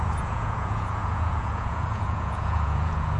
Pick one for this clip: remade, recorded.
remade